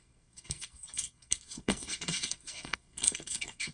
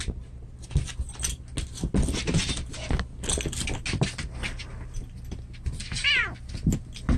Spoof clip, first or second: first